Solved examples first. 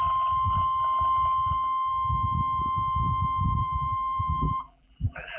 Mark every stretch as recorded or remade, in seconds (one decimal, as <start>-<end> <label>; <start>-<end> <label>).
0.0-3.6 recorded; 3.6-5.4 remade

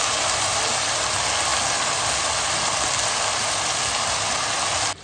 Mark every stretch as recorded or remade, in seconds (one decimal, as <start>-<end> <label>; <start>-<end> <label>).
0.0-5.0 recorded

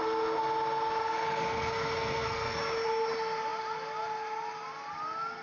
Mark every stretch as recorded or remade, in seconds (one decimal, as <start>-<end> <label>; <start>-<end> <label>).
0.0-1.0 recorded; 1.0-2.6 remade; 2.6-5.4 recorded